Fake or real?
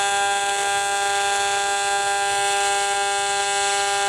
real